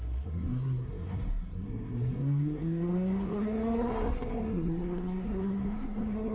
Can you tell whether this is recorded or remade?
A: remade